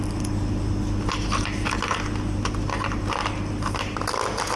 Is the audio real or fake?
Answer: real